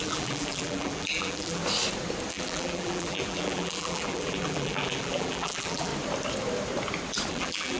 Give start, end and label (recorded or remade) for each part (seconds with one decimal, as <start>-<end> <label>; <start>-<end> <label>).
0.0-1.6 remade; 1.6-2.3 recorded; 2.3-5.9 remade; 5.9-7.3 recorded; 7.3-7.8 remade

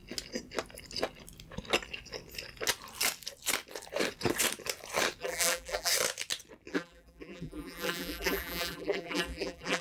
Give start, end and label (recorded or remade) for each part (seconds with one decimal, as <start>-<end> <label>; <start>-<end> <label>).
0.0-5.2 recorded; 5.2-5.9 remade; 5.9-6.7 recorded; 6.7-9.8 remade

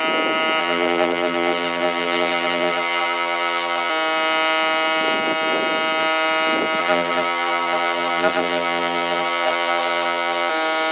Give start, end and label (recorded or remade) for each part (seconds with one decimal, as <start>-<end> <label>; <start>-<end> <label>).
0.0-0.6 recorded; 0.6-3.9 remade; 3.9-6.8 recorded; 6.8-10.5 remade; 10.5-10.9 recorded

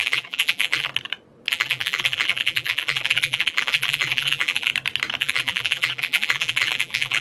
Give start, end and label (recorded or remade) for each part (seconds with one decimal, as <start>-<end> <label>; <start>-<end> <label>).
0.0-0.9 remade; 0.9-1.5 recorded; 1.5-4.7 remade; 4.7-5.2 recorded; 5.2-7.2 remade

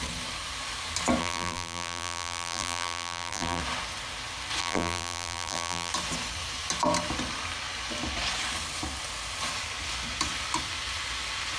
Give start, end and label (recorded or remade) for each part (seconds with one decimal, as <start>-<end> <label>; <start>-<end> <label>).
0.0-1.2 recorded; 1.2-3.6 remade; 3.6-4.6 recorded; 4.6-5.9 remade; 5.9-11.6 recorded

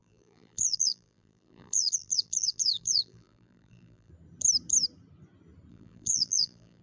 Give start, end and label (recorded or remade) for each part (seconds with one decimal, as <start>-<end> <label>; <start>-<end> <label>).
0.0-4.1 remade; 4.1-5.7 recorded; 5.7-6.8 remade

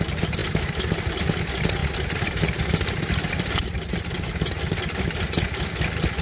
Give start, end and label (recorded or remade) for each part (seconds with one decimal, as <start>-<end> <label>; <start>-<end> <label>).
0.0-1.8 recorded; 1.8-4.2 remade; 4.2-6.2 recorded